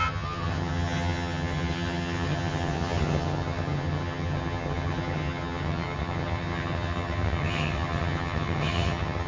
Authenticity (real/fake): fake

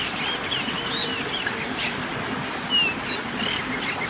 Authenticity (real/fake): real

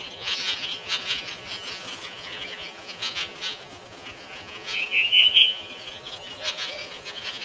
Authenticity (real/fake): fake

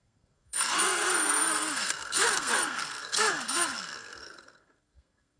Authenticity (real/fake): fake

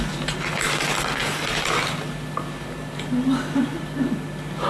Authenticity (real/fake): real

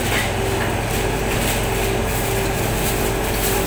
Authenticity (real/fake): real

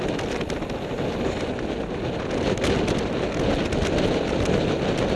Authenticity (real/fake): real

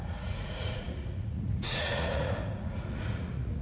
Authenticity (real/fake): fake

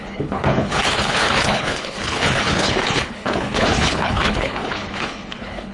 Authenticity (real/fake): fake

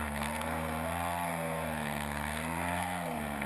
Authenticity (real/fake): fake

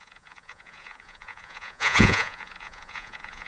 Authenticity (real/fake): fake